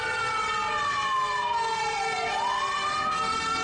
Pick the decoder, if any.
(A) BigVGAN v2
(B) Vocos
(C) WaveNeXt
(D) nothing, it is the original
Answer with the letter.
D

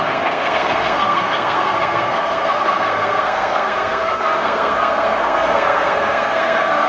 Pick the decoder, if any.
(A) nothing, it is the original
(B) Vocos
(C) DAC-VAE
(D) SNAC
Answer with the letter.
D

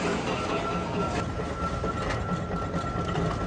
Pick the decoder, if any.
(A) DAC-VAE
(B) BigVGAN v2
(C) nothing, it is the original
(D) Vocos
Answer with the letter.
C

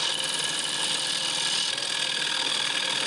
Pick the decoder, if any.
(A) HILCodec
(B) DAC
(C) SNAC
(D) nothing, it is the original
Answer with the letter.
D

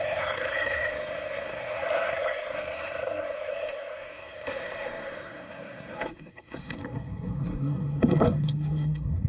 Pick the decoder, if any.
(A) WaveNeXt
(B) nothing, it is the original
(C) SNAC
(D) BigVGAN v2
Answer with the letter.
C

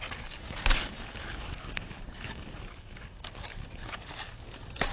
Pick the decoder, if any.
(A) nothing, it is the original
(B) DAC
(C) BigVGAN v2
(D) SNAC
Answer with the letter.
B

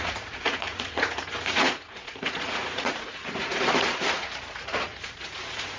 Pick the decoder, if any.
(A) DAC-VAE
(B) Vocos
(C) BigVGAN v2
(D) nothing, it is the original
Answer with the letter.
B